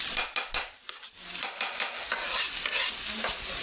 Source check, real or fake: real